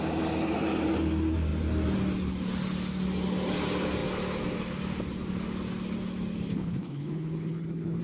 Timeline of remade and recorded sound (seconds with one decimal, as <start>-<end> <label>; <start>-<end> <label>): 0.0-6.5 recorded; 6.5-8.0 remade